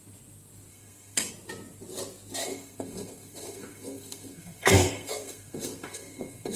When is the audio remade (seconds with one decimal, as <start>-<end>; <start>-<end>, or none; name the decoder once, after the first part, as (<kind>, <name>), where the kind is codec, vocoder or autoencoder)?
0.7-1.3 (codec, SNAC); 2.4-6.6